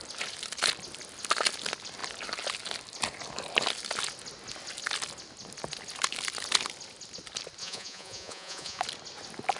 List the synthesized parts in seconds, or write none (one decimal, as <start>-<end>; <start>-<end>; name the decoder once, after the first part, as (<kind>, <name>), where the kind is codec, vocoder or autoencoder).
7.6-8.8 (vocoder, Vocos)